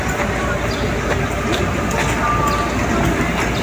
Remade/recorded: recorded